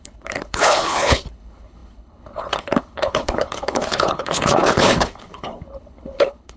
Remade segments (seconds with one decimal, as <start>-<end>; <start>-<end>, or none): 0.0-6.6